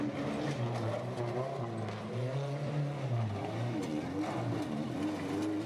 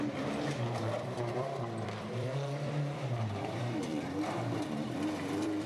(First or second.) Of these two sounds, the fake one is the second